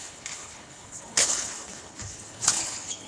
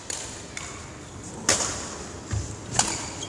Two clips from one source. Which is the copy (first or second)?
first